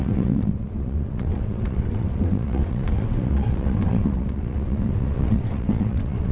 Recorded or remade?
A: remade